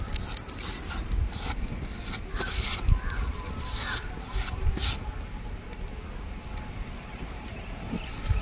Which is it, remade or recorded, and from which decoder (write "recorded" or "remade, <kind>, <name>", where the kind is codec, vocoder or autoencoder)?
recorded